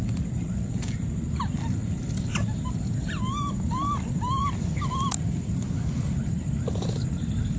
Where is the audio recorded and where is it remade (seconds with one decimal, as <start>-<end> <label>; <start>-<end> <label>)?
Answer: 0.0-7.6 recorded